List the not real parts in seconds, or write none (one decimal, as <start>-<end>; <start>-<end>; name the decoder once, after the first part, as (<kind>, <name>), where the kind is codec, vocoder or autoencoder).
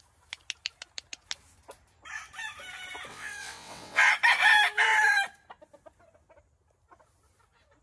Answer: 3.1-4.1 (vocoder, WaveNeXt)